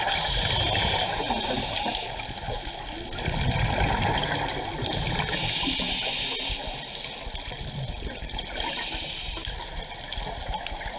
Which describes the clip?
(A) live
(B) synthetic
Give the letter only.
A